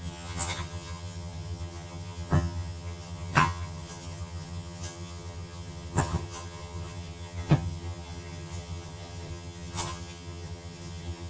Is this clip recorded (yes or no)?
no